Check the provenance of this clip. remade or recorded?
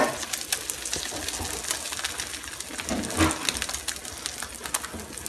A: recorded